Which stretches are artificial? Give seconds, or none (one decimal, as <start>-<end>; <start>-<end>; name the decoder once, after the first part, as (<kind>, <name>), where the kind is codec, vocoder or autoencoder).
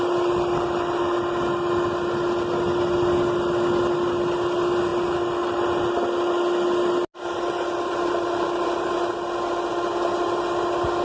none